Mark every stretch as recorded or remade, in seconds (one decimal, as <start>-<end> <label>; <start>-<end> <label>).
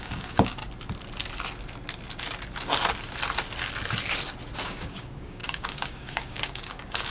0.0-0.6 remade; 0.6-4.6 recorded; 4.6-7.1 remade